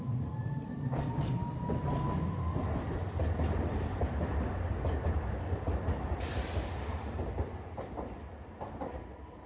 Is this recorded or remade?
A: recorded